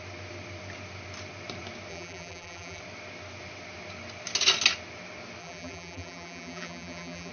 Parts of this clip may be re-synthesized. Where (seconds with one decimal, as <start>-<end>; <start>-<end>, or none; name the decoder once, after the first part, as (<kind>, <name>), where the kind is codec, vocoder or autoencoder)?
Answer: 1.9-2.8 (vocoder, BigVGAN v2); 5.4-7.3